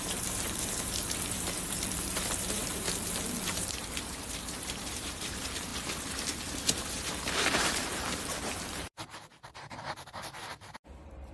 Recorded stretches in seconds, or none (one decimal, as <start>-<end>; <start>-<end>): none